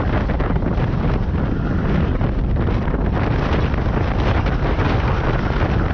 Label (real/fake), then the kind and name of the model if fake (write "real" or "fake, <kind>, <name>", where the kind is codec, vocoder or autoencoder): real